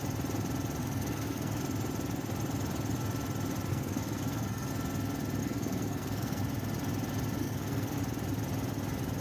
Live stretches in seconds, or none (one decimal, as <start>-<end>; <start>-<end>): 0.0-0.8; 1.6-3.7; 4.7-5.4; 6.4-7.4; 8.0-9.2